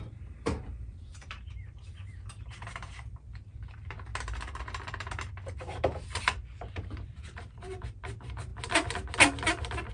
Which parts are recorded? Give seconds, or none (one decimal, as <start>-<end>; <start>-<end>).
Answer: 4.1-5.3; 8.5-9.9

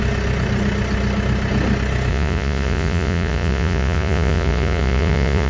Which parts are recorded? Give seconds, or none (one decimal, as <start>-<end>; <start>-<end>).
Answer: 0.0-2.1

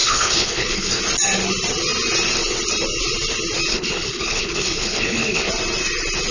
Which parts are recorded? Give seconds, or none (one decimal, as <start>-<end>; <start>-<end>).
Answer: 1.0-3.7; 5.5-6.3

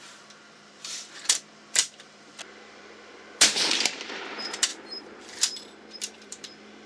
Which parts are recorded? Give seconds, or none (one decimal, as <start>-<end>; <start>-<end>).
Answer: 4.7-5.9

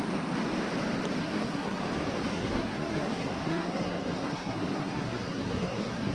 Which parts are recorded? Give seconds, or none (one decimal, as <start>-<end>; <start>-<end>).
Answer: 0.0-1.2; 1.8-2.3

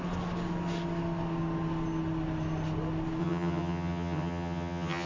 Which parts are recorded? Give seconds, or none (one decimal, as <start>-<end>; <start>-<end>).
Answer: 0.0-3.2

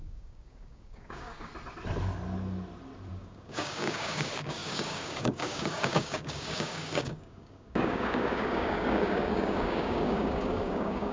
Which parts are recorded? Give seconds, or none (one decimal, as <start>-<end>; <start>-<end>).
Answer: 1.5-3.1

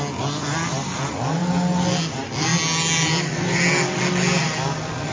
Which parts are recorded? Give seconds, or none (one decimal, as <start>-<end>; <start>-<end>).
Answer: 0.0-5.1